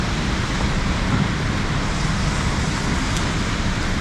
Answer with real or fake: real